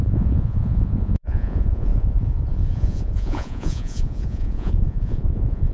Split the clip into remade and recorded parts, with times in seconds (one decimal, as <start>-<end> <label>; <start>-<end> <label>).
0.0-5.7 remade